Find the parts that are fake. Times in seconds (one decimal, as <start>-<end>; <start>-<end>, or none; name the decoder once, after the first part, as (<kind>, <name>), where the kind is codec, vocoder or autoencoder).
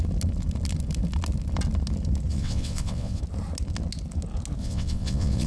2.3-3.2 (vocoder, WaveNeXt); 4.6-5.5